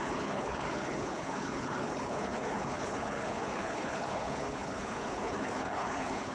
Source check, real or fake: fake